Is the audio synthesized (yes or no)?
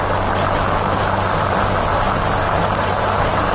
no